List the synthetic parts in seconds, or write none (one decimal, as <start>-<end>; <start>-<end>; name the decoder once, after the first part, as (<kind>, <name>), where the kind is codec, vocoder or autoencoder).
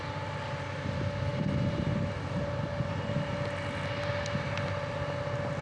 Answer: none